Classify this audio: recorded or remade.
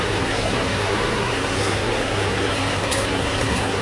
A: remade